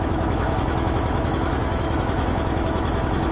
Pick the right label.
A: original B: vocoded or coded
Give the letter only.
B